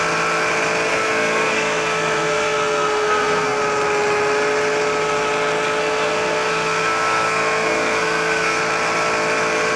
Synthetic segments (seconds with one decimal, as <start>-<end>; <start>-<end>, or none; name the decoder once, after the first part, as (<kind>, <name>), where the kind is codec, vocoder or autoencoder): 0.9-3.6 (codec, SNAC); 5.8-8.6

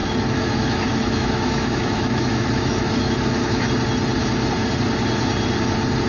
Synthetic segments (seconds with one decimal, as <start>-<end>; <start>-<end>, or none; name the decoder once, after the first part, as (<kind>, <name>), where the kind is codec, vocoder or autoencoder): 0.0-3.7 (autoencoder, DAC-VAE)